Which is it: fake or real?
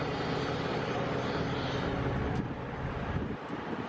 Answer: real